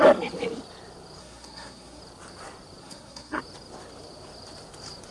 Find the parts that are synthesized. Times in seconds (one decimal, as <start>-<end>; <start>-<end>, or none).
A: 1.2-2.0; 2.8-3.4